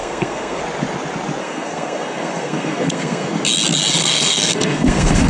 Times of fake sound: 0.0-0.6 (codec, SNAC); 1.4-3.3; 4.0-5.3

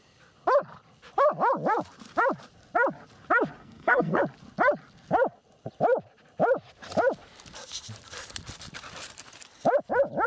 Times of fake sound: 3.6-4.2 (codec, SNAC)

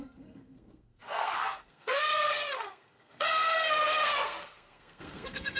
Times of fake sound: 0.0-5.6 (codec, SNAC)